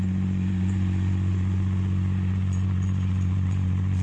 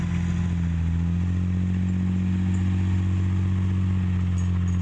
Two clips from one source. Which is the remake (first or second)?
first